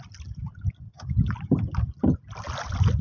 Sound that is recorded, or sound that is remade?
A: recorded